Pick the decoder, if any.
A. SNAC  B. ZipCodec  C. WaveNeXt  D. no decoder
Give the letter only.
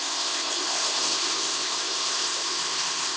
B